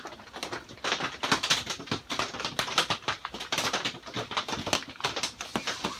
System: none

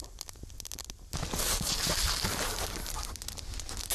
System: none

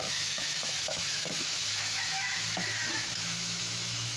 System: autoencoder, DAC-VAE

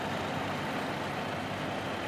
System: none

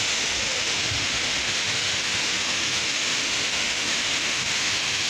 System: autoencoder, DAC-VAE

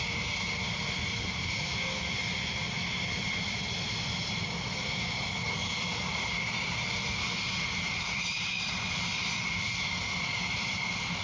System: none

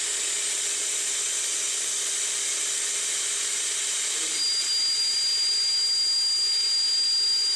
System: none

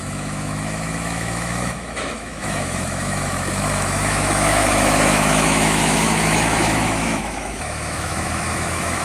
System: autoencoder, DAC-VAE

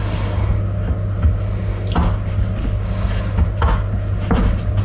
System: none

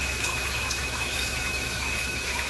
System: autoencoder, DAC-VAE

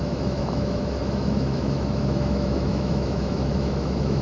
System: autoencoder, DAC-VAE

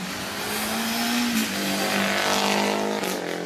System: none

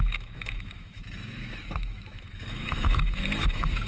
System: autoencoder, DAC-VAE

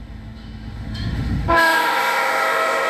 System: autoencoder, DAC-VAE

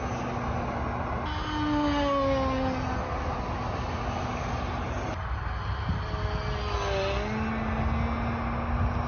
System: none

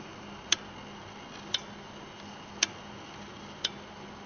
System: none